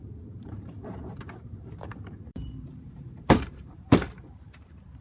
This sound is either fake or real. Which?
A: fake